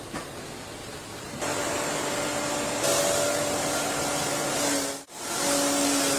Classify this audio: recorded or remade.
recorded